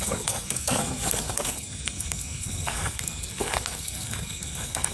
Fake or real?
fake